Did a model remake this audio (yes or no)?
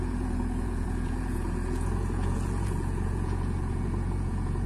yes